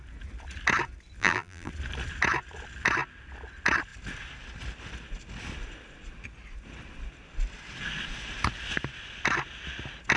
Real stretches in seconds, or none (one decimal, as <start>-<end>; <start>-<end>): 0.0-1.2; 1.7-10.2